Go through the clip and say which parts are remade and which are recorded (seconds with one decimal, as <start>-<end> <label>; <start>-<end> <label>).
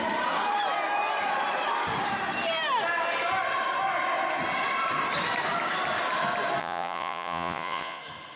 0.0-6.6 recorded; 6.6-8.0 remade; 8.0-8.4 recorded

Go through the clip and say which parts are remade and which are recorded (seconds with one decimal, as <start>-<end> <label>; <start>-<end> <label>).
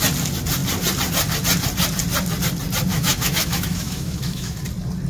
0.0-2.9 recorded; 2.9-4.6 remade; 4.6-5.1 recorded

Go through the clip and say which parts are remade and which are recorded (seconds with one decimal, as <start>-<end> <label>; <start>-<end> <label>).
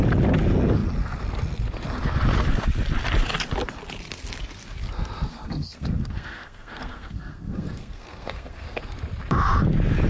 0.0-5.3 recorded; 5.3-8.8 remade; 8.8-10.1 recorded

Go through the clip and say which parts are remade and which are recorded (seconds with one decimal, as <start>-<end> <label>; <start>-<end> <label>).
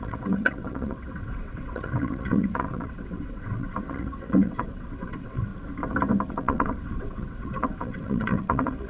0.0-5.5 remade; 5.5-6.3 recorded; 6.3-8.9 remade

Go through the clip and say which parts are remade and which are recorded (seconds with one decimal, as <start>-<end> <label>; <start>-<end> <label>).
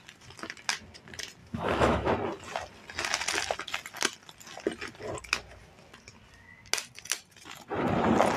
0.0-1.4 recorded; 1.4-2.1 remade; 2.1-8.4 recorded